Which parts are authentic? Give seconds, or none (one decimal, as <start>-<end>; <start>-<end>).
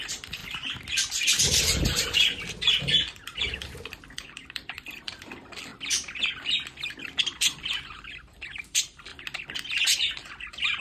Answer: 0.4-1.6; 5.7-7.2; 9.1-9.7